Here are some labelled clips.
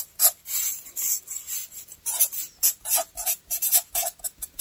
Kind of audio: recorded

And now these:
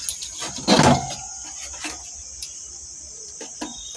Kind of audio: recorded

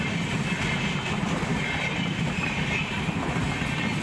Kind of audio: recorded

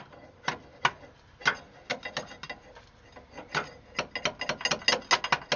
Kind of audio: recorded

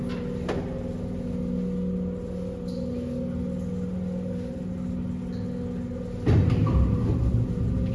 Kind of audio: recorded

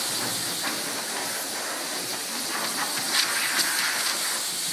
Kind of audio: recorded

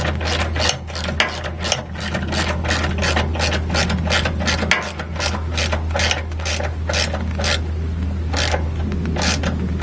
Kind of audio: recorded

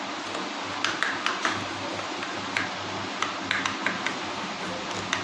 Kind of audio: recorded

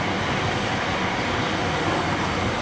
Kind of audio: recorded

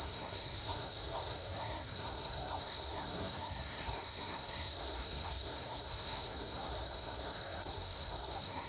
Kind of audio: remade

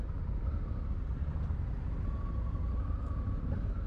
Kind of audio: recorded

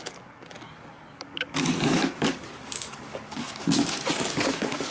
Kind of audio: remade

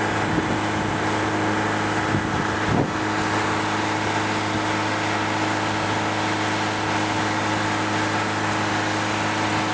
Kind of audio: recorded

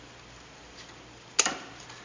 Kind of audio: recorded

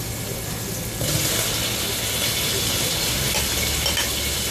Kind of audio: recorded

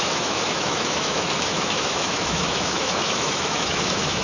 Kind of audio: remade